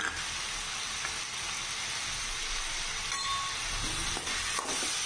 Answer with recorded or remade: recorded